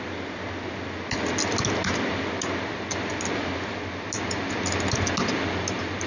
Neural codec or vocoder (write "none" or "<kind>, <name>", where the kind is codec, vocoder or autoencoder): none